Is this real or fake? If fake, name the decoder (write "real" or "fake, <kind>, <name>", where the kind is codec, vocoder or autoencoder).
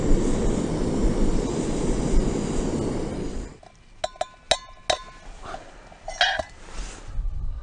real